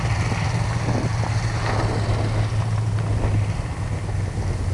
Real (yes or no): yes